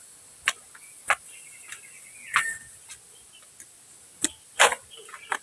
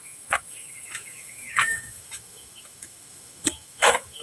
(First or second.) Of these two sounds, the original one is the first